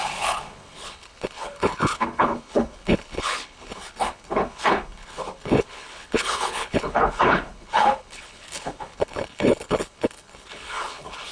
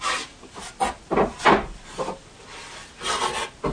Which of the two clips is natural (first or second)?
second